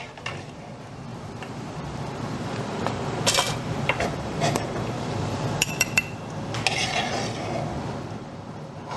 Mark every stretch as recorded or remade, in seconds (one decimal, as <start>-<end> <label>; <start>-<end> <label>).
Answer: 0.0-1.1 recorded; 1.1-6.2 remade; 6.2-9.0 recorded